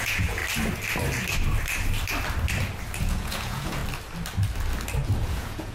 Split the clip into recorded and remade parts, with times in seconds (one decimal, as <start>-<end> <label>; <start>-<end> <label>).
0.0-0.4 remade; 0.4-3.0 recorded; 3.0-3.8 remade; 3.8-5.2 recorded; 5.2-5.7 remade